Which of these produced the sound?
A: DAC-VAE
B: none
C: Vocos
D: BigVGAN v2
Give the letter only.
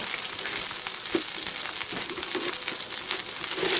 B